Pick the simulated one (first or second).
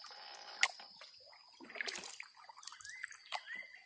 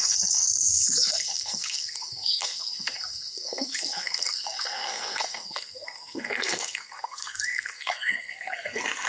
second